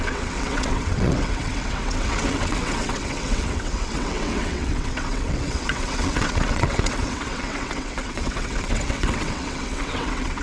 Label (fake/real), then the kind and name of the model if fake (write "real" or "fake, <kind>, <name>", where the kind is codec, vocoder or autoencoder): fake, vocoder, WaveNeXt